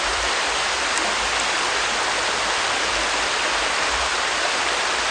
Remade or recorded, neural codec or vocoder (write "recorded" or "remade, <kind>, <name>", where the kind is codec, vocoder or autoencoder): recorded